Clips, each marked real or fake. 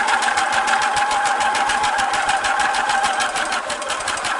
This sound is real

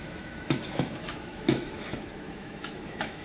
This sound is fake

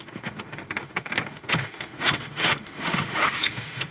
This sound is fake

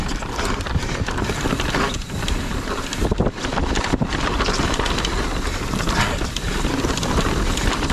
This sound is real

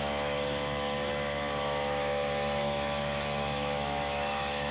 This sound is fake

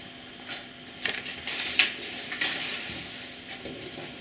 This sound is real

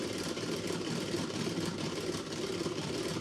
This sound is real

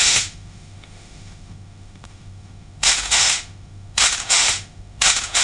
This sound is fake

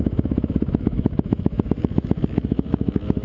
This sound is fake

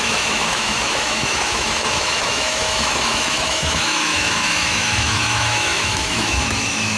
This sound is fake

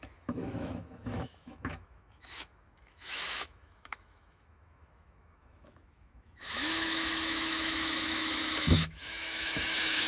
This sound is fake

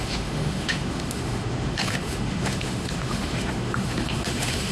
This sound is fake